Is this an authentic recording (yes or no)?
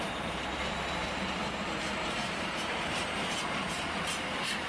no